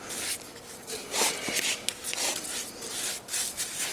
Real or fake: real